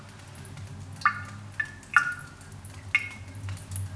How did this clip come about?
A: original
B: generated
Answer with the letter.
A